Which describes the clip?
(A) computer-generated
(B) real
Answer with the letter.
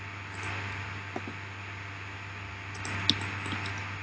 B